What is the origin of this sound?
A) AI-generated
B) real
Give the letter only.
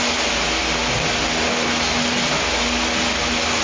B